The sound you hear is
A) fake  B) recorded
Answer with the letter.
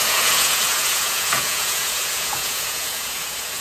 A